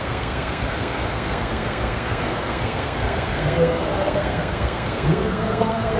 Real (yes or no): no